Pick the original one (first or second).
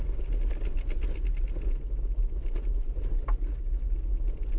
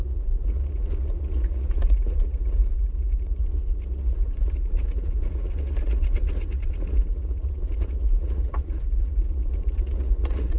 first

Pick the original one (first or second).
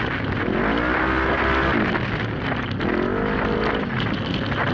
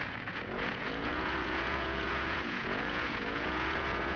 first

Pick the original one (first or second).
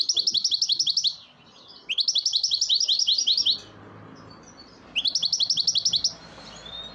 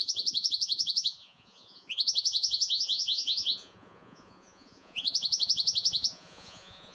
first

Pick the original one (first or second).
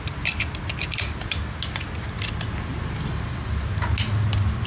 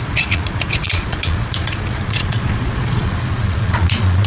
first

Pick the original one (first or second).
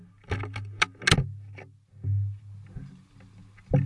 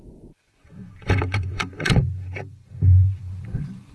first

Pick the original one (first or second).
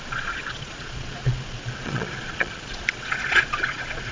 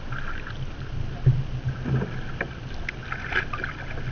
second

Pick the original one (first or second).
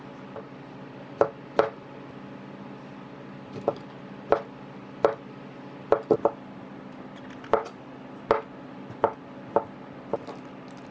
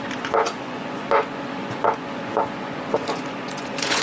first